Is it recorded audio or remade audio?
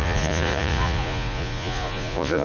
remade